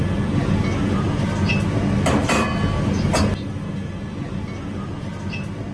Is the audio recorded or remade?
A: recorded